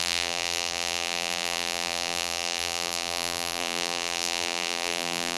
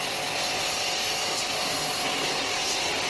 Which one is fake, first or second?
first